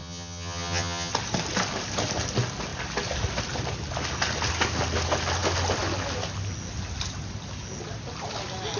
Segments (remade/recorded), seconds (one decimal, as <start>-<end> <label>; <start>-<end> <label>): 0.0-1.1 remade; 1.1-8.8 recorded